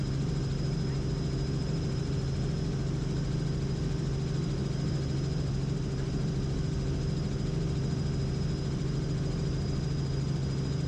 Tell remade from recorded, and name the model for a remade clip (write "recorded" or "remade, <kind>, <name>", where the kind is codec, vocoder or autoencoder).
recorded